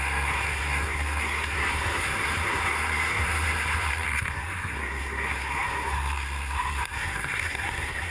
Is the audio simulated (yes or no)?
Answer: yes